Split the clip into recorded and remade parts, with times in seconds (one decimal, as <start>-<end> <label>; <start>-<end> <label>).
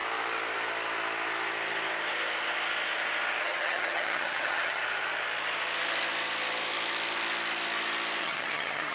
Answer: 0.0-3.4 recorded; 3.4-4.8 remade; 4.8-8.2 recorded; 8.2-8.9 remade